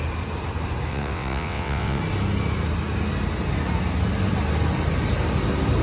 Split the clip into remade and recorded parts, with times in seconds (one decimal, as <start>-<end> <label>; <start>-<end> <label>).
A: 0.0-0.9 recorded; 0.9-2.0 remade; 2.0-5.8 recorded

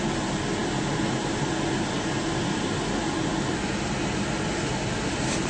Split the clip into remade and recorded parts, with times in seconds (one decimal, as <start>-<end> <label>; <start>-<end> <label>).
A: 0.0-5.5 recorded

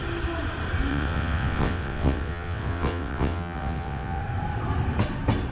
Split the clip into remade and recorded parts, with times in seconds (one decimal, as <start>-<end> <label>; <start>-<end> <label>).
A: 0.0-0.9 recorded; 0.9-4.2 remade; 4.2-5.5 recorded